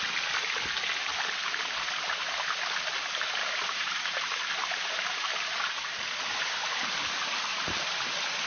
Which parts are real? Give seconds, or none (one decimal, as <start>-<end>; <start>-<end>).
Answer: 0.0-3.4; 6.0-8.5